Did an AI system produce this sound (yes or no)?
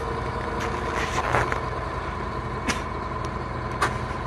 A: no